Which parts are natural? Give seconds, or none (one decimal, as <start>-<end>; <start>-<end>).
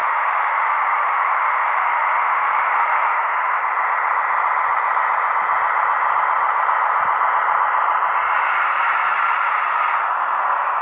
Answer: 3.6-10.8